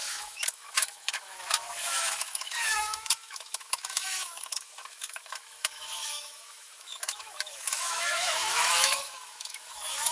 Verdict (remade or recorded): remade